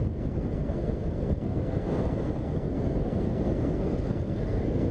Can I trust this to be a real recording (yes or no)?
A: no